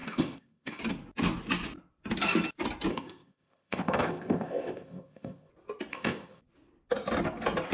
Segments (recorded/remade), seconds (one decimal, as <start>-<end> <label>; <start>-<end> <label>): 0.0-0.8 remade; 0.8-2.9 recorded; 2.9-5.5 remade; 5.5-5.9 recorded; 5.9-6.4 remade; 6.4-7.7 recorded